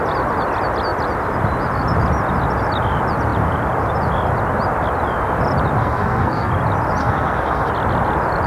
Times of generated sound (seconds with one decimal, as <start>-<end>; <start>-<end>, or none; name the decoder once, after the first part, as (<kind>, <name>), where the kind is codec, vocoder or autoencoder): 5.8-6.5 (codec, SNAC); 7.0-7.7